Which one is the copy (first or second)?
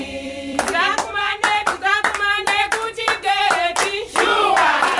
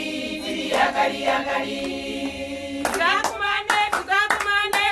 first